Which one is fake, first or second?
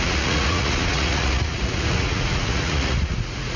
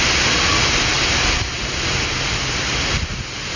first